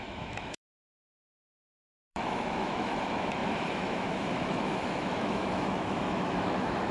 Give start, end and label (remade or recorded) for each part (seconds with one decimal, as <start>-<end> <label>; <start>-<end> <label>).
0.0-6.9 remade